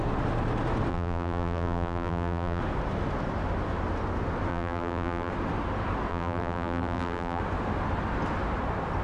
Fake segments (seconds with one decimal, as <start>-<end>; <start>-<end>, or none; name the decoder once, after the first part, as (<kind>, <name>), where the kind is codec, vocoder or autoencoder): 0.9-2.6 (vocoder, BigVGAN v2); 4.5-5.3; 6.1-7.4